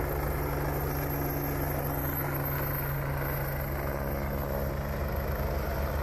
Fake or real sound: real